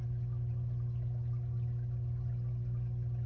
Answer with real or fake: real